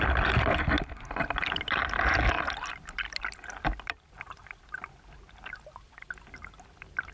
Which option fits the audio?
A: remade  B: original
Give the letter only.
B